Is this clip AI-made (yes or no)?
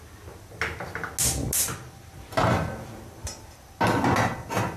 no